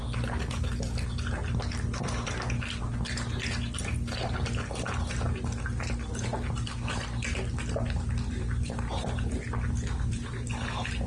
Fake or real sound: fake